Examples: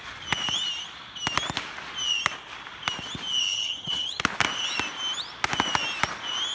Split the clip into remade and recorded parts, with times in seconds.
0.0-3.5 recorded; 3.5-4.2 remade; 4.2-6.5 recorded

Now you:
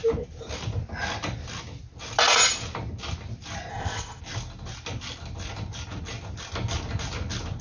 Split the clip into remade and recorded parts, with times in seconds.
0.0-3.7 recorded; 3.7-4.2 remade; 4.2-7.6 recorded

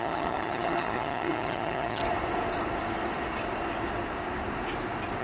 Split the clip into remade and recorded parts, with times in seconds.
0.0-2.0 remade; 2.0-5.2 recorded

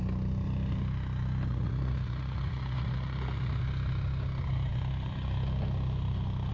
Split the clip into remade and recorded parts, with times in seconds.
0.0-1.5 recorded; 1.5-3.6 remade; 3.6-6.5 recorded

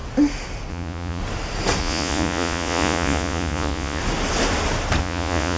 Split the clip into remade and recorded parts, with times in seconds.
0.0-0.7 recorded; 0.7-1.2 remade; 1.2-1.8 recorded; 1.8-4.0 remade; 4.0-5.0 recorded; 5.0-5.6 remade

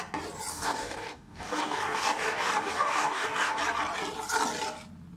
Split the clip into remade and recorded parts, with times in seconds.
0.0-0.5 recorded; 0.5-3.6 remade; 3.6-5.2 recorded

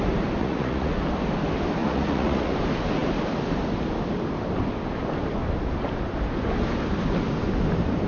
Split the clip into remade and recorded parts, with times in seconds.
0.0-0.4 recorded; 0.4-0.9 remade; 0.9-1.8 recorded; 1.8-2.5 remade; 2.5-8.1 recorded